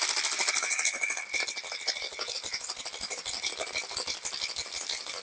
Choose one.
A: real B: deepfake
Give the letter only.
A